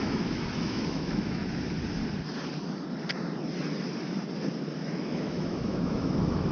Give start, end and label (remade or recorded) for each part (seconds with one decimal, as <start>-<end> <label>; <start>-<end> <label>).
0.0-1.4 remade; 1.4-4.9 recorded; 4.9-6.5 remade